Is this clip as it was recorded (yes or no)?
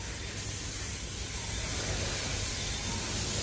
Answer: yes